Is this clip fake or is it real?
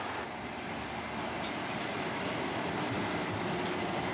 real